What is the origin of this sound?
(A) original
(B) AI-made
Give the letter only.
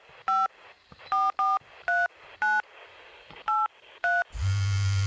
A